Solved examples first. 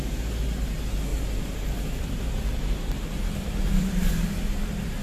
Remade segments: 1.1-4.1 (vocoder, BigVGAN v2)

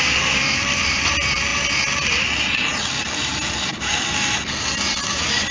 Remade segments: none

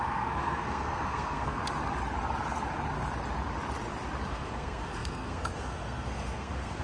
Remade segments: 0.0-1.6 (codec, SNAC); 4.3-6.8

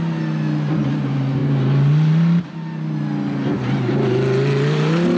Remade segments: none